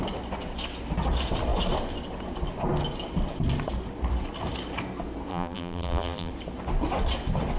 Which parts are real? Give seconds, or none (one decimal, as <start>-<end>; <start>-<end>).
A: 0.0-5.3; 6.3-7.6